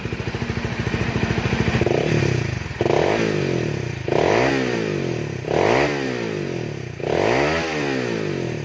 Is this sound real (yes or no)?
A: yes